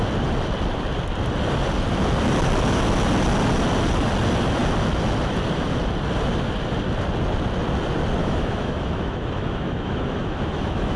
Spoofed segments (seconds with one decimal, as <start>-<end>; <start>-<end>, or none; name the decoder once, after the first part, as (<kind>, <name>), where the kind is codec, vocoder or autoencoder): 8.2-11.0 (autoencoder, DAC-VAE)